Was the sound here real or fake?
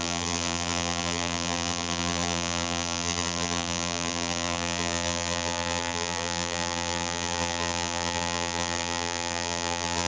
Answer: fake